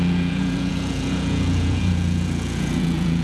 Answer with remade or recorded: remade